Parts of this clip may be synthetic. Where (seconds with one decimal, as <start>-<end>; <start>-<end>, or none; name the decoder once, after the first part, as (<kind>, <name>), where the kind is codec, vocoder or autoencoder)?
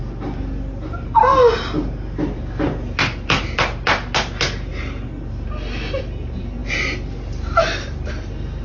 none